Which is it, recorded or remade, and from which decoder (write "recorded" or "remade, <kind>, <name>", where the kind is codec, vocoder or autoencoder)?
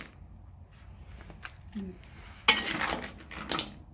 recorded